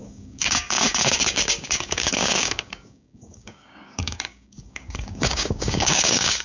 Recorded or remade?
remade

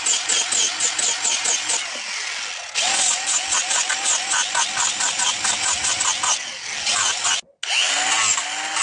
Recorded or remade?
recorded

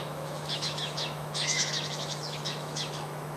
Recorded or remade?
remade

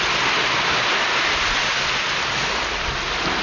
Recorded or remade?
recorded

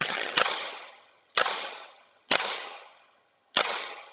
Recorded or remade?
remade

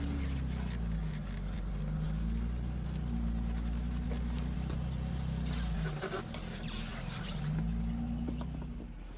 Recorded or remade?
recorded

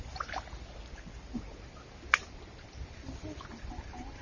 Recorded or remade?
recorded